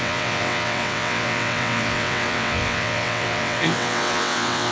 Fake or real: fake